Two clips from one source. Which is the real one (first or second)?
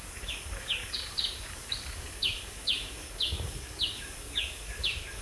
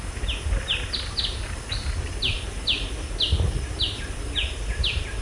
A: second